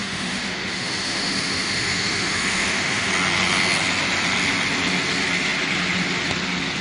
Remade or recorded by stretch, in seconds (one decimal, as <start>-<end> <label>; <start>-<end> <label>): 0.0-3.1 remade; 3.1-6.8 recorded